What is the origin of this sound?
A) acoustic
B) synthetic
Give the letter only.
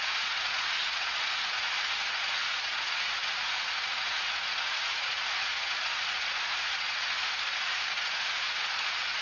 B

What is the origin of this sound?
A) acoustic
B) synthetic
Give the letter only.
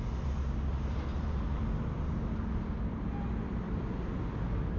A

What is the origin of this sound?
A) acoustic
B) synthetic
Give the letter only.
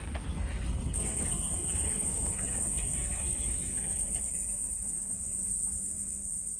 B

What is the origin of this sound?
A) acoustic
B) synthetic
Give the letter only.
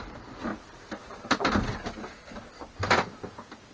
A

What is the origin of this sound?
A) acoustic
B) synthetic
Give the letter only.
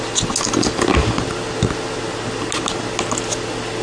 A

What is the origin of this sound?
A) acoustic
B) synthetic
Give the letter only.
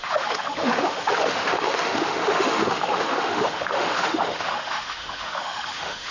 B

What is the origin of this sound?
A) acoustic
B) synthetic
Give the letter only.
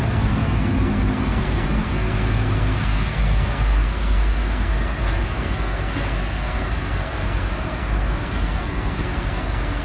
B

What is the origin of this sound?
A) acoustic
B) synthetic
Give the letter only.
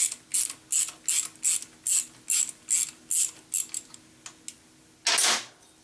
A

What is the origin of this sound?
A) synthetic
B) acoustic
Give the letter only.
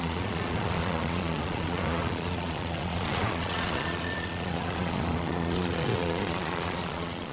A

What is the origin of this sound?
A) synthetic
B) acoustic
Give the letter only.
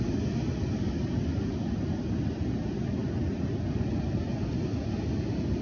B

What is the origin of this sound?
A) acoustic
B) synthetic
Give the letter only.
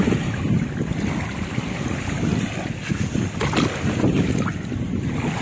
A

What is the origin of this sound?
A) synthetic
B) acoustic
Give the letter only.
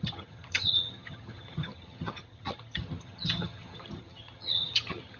A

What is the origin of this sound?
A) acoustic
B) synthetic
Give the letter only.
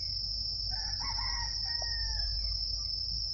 A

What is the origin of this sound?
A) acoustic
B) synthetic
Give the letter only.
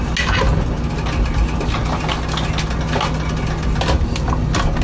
A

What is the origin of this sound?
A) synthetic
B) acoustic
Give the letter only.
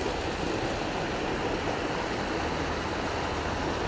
B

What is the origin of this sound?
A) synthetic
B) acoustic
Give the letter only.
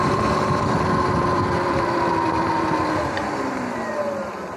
B